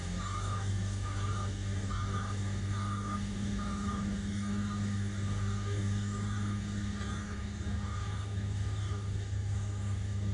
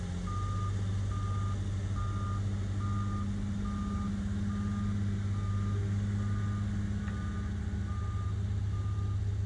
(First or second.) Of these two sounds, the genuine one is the second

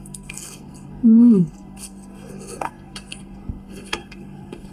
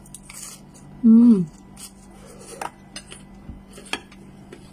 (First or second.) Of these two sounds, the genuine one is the second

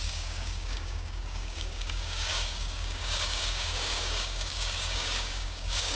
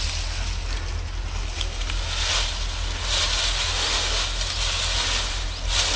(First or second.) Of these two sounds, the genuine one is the second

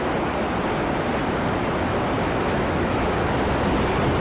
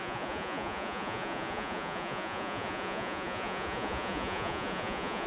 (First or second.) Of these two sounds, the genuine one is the first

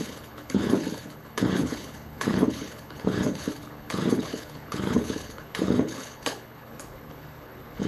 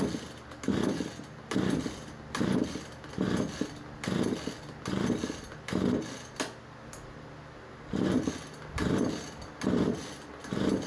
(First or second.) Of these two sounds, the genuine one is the second